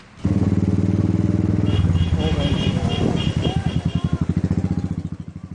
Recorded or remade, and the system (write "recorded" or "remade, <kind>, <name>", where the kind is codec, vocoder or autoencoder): recorded